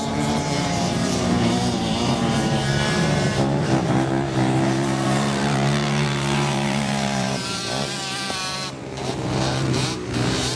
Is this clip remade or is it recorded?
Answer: remade